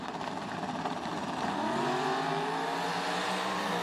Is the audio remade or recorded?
recorded